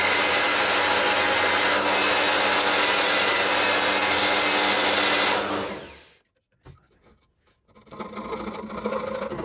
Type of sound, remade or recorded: recorded